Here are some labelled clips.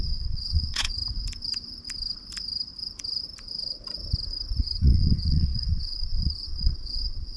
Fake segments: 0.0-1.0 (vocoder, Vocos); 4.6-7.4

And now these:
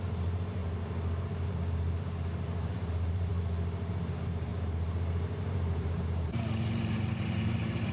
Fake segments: 0.0-0.6 (vocoder, BigVGAN v2); 1.2-3.3; 3.9-7.9